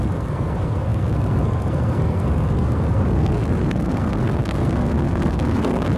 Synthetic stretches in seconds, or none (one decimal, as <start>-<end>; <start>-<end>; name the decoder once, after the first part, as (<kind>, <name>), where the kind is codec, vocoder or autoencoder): 0.0-6.0 (codec, SNAC)